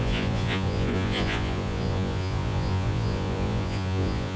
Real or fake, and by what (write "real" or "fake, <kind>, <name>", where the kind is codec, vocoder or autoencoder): fake, vocoder, Vocos